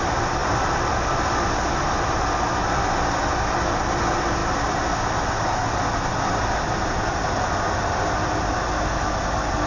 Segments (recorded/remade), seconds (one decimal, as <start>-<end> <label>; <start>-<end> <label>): 0.0-9.7 recorded